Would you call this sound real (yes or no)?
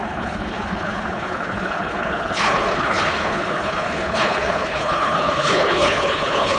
no